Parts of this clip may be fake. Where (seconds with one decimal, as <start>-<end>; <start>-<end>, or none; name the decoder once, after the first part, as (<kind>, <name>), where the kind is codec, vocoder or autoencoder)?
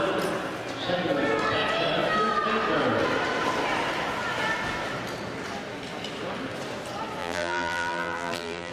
7.2-8.7 (vocoder, BigVGAN v2)